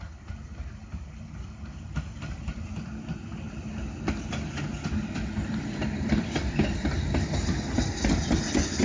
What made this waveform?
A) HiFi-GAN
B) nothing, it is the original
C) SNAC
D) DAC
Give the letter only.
B